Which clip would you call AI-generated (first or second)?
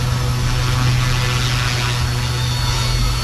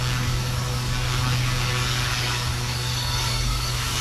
second